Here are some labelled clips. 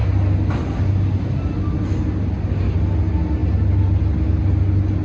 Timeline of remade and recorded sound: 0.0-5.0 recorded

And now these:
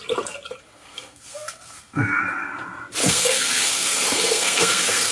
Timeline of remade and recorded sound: 0.0-0.7 recorded; 0.7-2.2 remade; 2.2-3.0 recorded; 3.0-5.1 remade

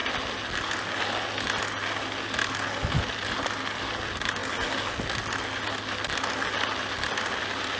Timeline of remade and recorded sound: 0.0-7.8 recorded

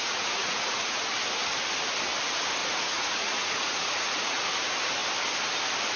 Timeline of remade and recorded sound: 0.0-1.0 remade; 1.0-2.6 recorded; 2.6-4.5 remade; 4.5-6.0 recorded

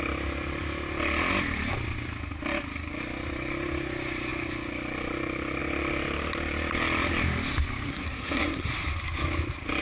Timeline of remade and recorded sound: 0.0-7.9 recorded; 7.9-8.7 remade; 8.7-9.8 recorded

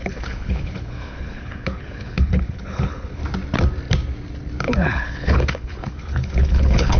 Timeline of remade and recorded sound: 0.0-3.2 remade; 3.2-4.6 recorded; 4.6-7.0 remade